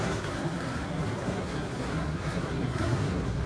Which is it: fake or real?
fake